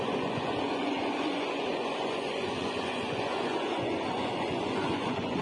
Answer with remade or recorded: remade